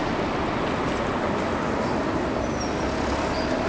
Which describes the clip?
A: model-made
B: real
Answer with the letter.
B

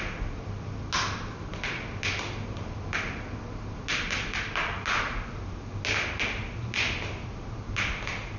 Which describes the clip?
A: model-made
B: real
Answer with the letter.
B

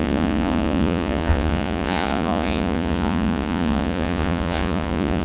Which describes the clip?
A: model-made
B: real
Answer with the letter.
A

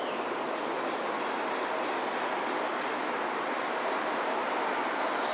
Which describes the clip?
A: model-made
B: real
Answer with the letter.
B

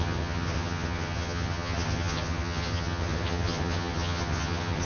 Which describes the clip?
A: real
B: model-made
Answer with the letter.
B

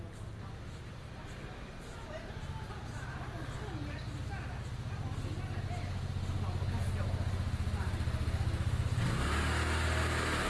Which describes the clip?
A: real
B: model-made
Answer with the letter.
A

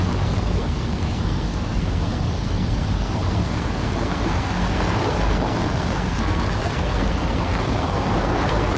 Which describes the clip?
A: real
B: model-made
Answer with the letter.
B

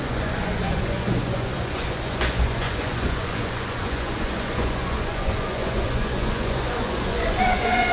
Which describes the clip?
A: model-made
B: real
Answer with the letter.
A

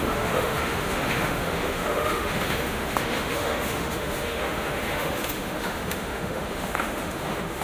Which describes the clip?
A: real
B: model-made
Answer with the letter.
B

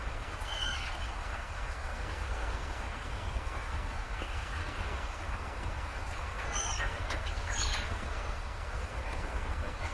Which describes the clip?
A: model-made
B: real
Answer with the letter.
A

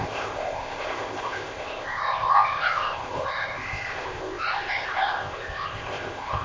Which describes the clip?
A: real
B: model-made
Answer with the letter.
B